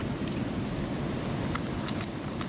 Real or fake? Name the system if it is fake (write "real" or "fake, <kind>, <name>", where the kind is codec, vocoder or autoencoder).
real